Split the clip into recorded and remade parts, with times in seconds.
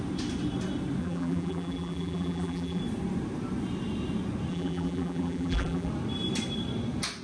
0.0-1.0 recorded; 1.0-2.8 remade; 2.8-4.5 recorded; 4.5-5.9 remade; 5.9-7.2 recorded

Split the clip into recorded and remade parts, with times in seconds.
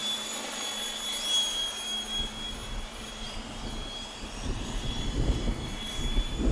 0.0-0.6 remade; 0.6-2.6 recorded; 2.6-6.5 remade